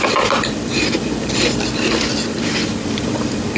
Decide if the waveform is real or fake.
fake